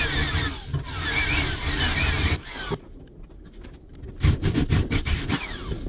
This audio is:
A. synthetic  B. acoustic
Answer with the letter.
B